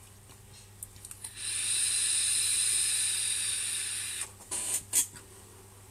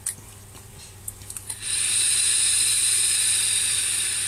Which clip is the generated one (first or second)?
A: second